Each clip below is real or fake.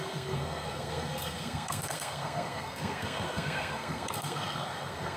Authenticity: fake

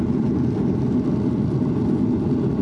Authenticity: real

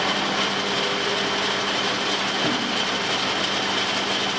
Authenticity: real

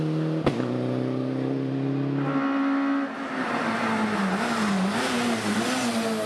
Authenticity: real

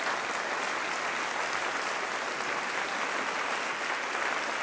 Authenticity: real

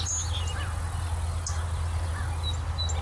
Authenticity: real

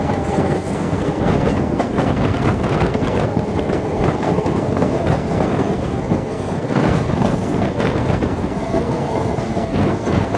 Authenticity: fake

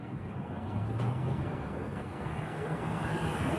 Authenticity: fake